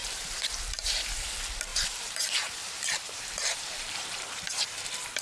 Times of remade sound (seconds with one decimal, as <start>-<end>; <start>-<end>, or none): 0.0-1.0; 1.7-4.8